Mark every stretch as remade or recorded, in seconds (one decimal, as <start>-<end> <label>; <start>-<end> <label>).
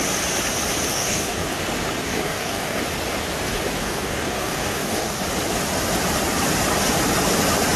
0.0-0.9 recorded; 0.9-1.6 remade; 1.6-2.0 recorded; 2.0-2.8 remade; 2.8-3.8 recorded; 3.8-5.2 remade; 5.2-7.8 recorded